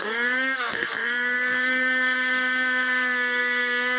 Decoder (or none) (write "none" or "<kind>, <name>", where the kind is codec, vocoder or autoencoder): codec, SNAC